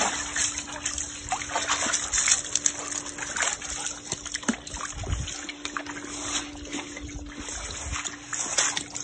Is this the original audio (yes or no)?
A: yes